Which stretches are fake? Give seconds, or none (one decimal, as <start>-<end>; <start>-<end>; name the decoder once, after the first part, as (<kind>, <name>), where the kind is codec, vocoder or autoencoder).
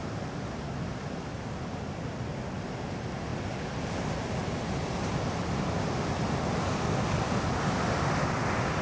none